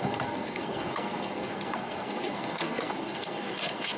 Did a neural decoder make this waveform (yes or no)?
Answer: yes